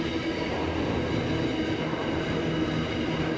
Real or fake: real